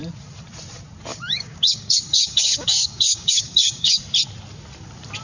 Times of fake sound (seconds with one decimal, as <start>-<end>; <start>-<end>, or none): 1.1-4.0